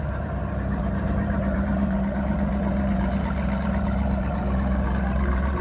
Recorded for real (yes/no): no